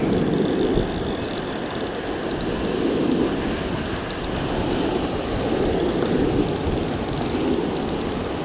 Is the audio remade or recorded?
recorded